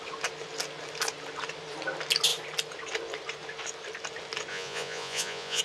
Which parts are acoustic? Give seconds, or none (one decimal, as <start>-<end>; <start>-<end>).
0.0-4.5